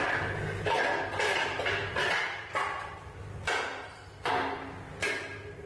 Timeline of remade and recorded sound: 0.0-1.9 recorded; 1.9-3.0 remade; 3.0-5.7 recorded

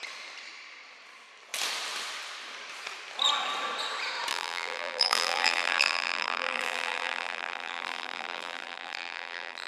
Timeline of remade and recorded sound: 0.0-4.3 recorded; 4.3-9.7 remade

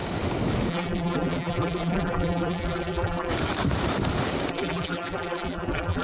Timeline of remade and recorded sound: 0.0-0.7 recorded; 0.7-3.3 remade; 3.3-4.5 recorded; 4.5-6.0 remade

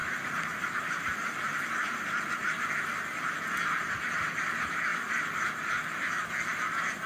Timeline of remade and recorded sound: 0.0-0.6 remade; 0.6-7.1 recorded